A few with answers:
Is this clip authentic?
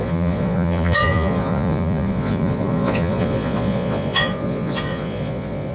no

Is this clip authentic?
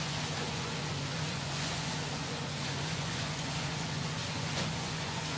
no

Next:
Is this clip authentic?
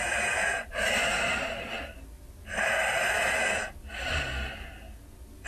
yes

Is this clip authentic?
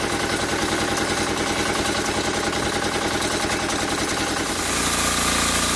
yes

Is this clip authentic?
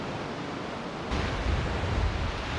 yes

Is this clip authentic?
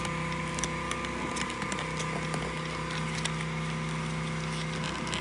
yes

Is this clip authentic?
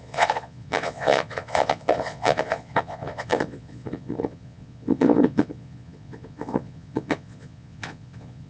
no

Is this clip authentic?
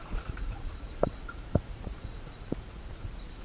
no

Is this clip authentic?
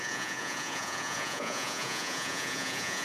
no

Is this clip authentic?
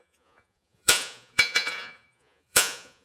no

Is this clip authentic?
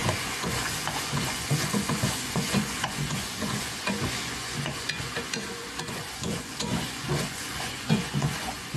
no